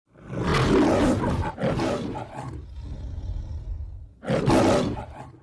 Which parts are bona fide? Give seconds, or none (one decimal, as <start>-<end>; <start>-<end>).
0.0-5.4